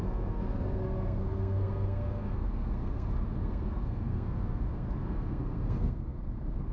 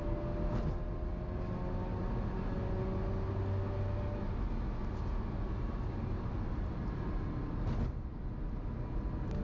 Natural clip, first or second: second